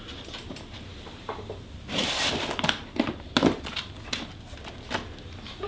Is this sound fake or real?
real